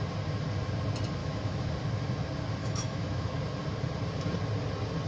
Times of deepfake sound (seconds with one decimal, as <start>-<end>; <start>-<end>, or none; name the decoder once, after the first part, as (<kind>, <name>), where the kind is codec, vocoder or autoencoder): 1.2-1.7 (autoencoder, DAC-VAE); 2.6-3.3